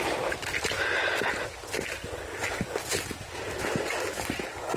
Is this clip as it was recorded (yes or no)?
yes